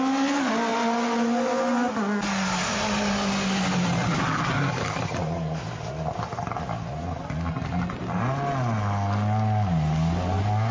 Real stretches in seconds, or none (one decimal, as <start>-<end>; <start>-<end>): 0.0-10.7